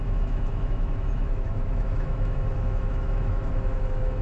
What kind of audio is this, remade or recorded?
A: remade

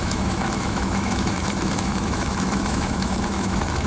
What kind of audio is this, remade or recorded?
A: remade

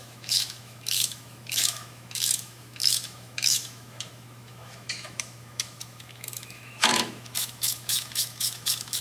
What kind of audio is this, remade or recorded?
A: remade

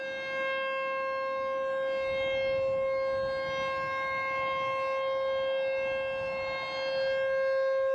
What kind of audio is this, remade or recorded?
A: recorded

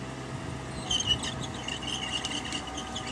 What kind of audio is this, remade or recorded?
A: recorded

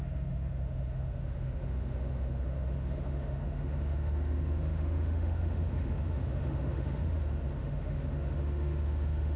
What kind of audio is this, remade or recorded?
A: remade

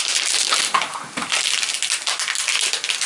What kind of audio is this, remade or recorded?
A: recorded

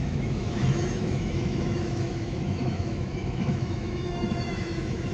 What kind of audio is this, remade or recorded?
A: remade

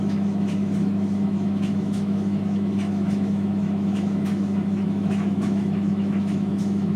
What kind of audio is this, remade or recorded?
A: remade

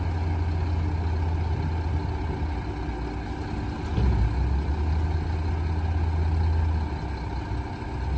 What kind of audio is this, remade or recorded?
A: recorded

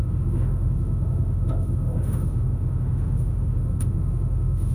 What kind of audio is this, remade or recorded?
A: remade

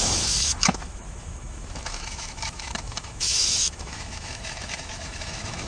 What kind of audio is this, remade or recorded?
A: remade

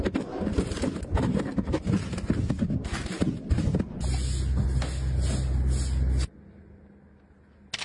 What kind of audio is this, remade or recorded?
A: recorded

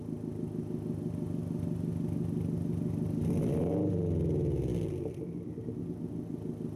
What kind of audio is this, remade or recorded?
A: recorded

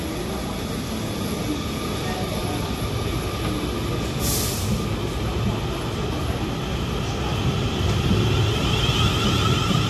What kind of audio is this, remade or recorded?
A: recorded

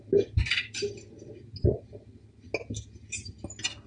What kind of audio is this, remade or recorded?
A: recorded